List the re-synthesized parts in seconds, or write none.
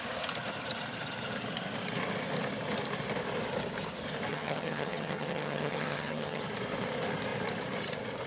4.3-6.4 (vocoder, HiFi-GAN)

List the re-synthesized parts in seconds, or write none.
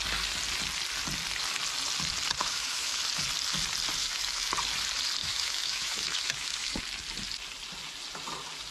2.4-3.0 (autoencoder, DAC-VAE); 4.0-4.5; 5.2-6.8